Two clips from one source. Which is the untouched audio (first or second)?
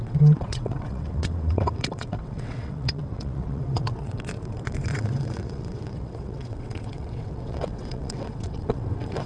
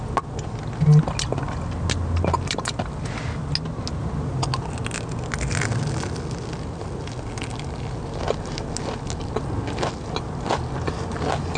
second